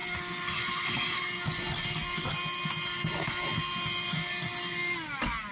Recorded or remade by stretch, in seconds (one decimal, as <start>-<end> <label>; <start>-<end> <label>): 0.0-5.5 recorded